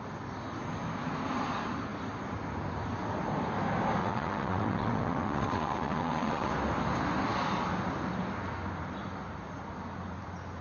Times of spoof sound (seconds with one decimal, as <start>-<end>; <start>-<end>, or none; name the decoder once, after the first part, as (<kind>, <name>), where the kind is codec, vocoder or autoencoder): 4.0-6.5 (vocoder, WaveNeXt)